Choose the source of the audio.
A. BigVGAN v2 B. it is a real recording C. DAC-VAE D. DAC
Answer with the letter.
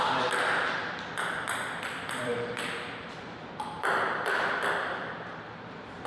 A